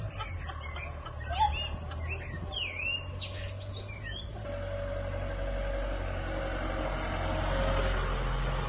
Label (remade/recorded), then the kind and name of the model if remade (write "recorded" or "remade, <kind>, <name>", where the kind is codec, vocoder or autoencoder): recorded